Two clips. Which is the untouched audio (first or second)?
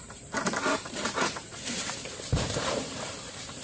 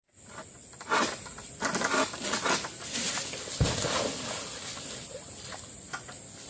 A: second